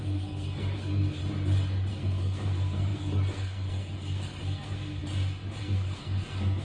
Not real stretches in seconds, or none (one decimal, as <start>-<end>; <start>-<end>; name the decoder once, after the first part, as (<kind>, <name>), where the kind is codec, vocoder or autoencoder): 0.0-1.2 (codec, SNAC); 1.9-5.0; 5.6-6.6